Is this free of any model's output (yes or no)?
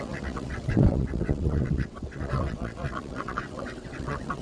no